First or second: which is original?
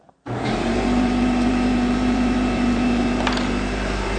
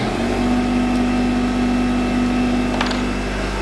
second